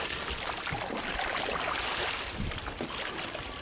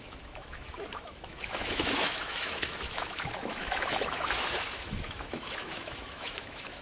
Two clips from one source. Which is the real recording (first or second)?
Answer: first